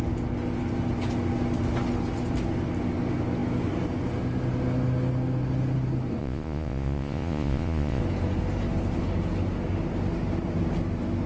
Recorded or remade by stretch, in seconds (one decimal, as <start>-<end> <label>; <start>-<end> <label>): 0.0-6.2 recorded; 6.2-8.0 remade; 8.0-11.3 recorded